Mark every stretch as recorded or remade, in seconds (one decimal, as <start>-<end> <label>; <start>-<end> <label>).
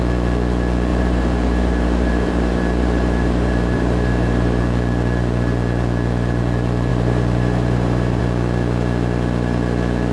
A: 0.0-0.9 recorded; 0.9-4.6 remade; 4.6-6.9 recorded; 6.9-8.2 remade; 8.2-10.1 recorded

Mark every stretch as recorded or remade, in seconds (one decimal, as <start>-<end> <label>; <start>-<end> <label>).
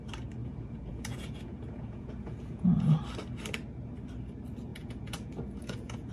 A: 0.0-0.4 recorded; 0.4-3.0 remade; 3.0-4.7 recorded; 4.7-6.1 remade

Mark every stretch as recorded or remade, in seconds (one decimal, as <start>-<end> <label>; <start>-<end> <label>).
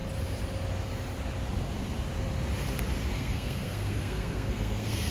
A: 0.0-3.1 recorded; 3.1-5.1 remade